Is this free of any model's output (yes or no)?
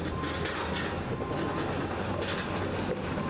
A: yes